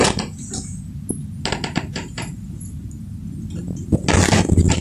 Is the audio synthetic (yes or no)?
no